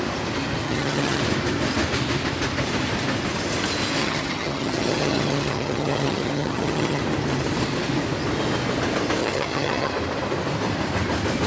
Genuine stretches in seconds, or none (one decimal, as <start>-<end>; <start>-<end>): 0.0-0.6; 1.2-4.0; 7.0-9.2; 9.9-11.5